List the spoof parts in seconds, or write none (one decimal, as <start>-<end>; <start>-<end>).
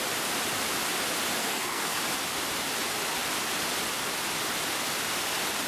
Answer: 1.4-2.0